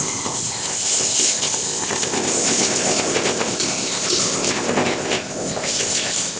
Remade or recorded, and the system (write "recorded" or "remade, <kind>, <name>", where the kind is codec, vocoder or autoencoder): remade, codec, ZipCodec